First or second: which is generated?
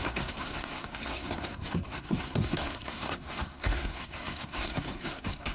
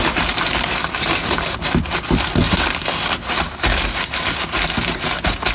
first